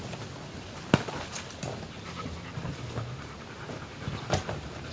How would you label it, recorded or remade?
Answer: recorded